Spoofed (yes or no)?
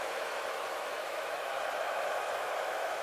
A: yes